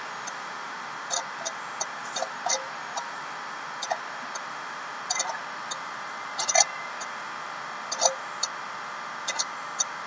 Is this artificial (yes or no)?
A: no